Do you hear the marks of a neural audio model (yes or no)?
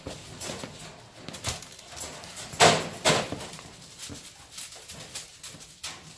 no